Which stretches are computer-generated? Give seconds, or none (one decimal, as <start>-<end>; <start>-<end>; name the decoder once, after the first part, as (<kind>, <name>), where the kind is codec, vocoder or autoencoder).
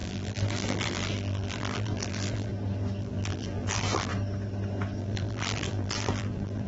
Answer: 0.0-2.5 (vocoder, BigVGAN v2); 3.0-4.1; 5.0-6.7